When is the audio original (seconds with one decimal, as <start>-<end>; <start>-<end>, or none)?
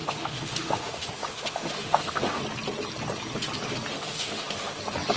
2.4-3.9; 4.8-5.2